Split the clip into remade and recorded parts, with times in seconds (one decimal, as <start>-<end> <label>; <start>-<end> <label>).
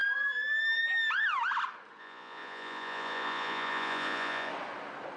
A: 0.0-2.0 recorded; 2.0-4.5 remade; 4.5-5.2 recorded